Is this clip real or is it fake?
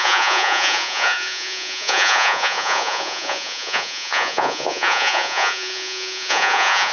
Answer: fake